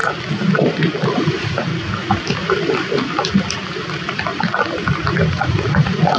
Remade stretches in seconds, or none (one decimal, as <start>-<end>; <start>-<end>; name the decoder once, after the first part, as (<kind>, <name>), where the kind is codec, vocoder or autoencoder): 1.1-1.7 (vocoder, Vocos); 5.3-6.2